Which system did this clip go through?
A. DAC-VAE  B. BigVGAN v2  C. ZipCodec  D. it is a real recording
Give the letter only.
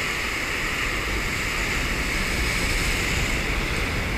D